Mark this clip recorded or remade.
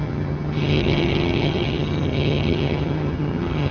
remade